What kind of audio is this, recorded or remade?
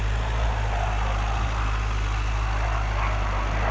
recorded